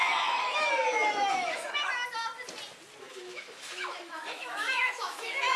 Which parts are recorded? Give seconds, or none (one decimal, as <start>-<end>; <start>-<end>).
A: 1.9-3.0